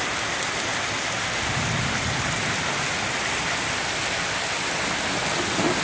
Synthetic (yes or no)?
no